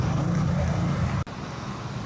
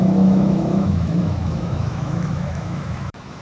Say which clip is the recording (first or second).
first